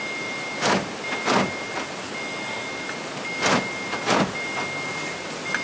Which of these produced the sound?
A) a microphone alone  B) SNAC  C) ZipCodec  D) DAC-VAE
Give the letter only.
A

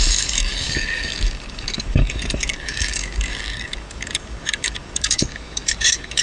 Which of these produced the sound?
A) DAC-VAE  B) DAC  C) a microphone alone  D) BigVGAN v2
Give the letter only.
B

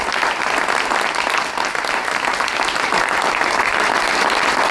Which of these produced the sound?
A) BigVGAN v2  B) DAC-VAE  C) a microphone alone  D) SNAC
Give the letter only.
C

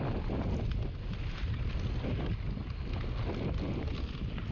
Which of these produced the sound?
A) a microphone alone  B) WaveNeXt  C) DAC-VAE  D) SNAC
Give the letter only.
A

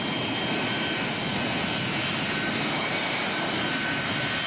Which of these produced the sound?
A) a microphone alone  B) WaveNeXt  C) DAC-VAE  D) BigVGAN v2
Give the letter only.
A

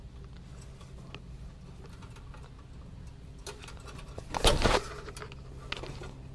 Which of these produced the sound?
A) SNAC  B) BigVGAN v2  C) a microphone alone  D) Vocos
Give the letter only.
C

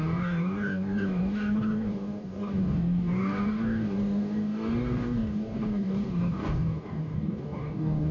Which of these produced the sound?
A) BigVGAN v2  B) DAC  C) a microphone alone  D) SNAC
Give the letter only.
B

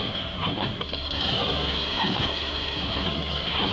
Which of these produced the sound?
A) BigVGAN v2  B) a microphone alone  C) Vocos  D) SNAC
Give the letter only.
D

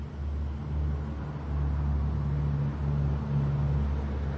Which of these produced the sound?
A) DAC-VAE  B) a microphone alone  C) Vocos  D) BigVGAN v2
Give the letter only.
B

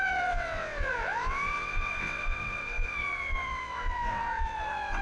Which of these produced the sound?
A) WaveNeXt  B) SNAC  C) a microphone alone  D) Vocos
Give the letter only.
A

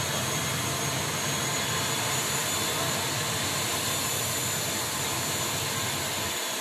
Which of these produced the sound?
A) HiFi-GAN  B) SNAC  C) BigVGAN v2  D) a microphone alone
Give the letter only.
D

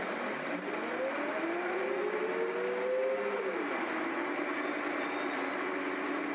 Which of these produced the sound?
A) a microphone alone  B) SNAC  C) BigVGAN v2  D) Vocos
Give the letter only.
A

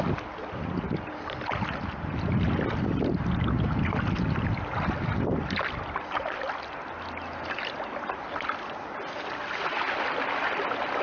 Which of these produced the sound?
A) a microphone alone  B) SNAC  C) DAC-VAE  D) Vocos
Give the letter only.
A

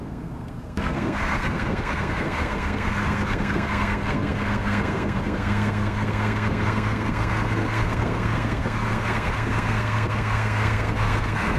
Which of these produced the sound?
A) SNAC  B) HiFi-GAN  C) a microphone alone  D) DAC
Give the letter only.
A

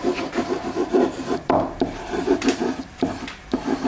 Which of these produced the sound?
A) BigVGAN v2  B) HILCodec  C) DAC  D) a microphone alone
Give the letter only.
A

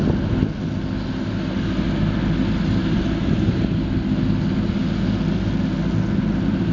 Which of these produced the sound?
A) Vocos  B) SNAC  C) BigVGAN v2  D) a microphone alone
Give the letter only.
D